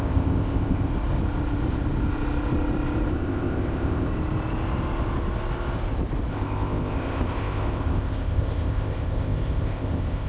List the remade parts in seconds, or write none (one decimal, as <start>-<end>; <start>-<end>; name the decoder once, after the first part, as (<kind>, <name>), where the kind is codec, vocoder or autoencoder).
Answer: 0.0-0.9 (codec, ZipCodec); 3.1-4.1; 6.3-10.3